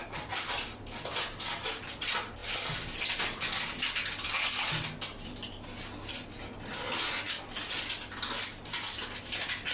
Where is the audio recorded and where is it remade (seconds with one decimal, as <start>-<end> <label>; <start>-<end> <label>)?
0.0-9.7 recorded